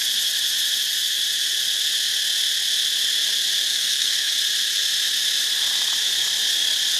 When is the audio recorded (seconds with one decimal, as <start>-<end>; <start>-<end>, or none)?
0.0-3.7; 4.3-7.0